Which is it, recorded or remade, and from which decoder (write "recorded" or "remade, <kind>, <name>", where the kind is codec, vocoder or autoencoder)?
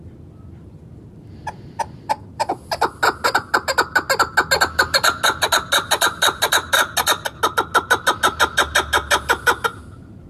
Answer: recorded